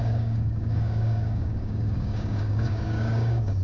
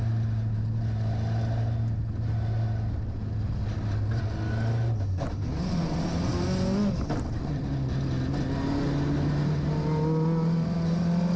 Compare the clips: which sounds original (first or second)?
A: second